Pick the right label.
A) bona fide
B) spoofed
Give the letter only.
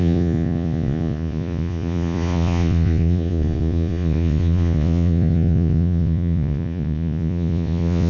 B